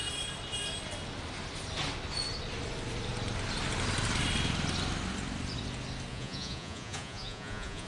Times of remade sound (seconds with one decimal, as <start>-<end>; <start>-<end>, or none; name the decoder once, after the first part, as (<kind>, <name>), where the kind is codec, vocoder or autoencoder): 6.1-7.9 (vocoder, Vocos)